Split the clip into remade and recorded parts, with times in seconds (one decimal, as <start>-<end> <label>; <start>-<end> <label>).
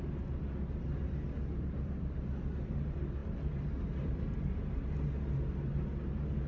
0.0-6.5 recorded